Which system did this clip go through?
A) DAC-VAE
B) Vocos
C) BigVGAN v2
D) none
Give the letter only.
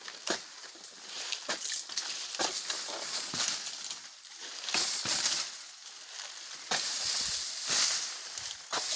D